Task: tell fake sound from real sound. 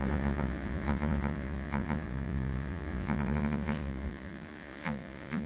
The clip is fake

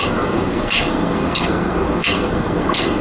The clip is fake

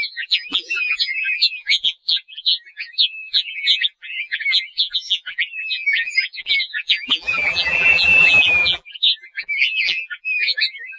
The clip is fake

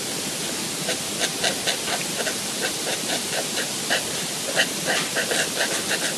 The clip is real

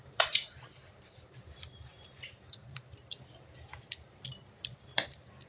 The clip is fake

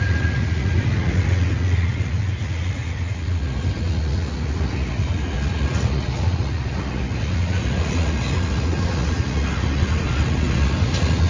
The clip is fake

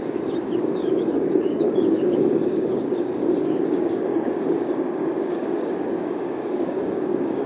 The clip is fake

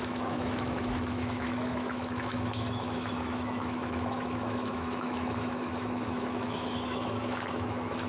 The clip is fake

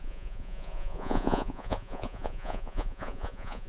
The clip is fake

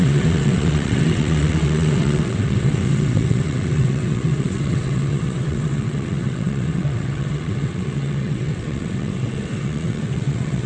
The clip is fake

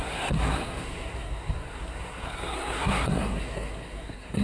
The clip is fake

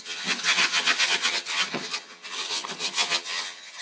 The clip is fake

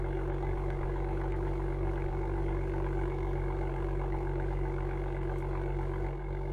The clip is fake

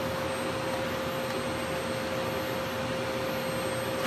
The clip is real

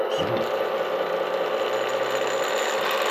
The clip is real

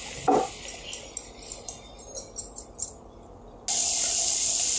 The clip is real